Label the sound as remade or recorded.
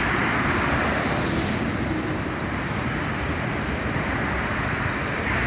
recorded